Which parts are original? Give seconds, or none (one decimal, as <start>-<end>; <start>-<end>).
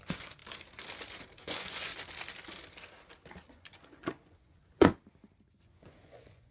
0.4-1.4; 1.9-3.5; 4.9-5.6